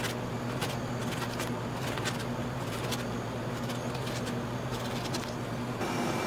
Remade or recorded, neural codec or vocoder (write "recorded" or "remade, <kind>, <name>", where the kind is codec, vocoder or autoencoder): recorded